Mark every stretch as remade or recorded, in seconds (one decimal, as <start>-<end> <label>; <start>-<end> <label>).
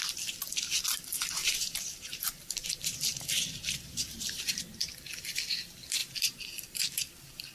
0.0-1.4 recorded; 1.4-4.6 remade; 4.6-6.0 recorded; 6.0-7.0 remade; 7.0-7.5 recorded